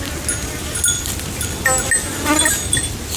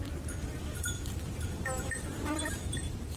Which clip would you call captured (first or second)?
first